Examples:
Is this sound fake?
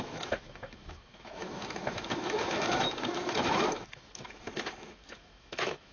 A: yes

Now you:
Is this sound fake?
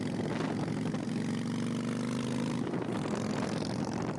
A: no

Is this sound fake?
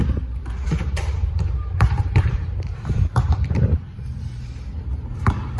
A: yes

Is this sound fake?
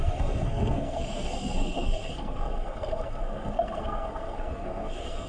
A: yes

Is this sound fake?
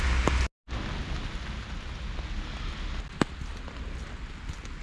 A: no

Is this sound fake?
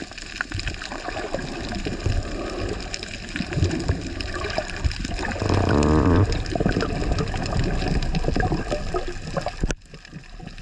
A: no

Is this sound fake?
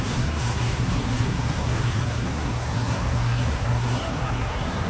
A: yes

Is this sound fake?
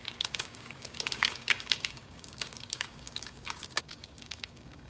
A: yes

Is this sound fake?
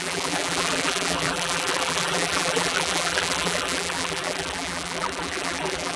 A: yes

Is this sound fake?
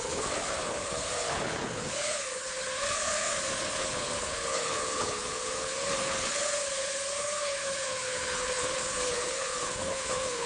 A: yes